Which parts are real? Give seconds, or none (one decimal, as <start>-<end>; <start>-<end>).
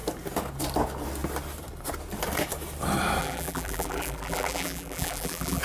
0.0-3.2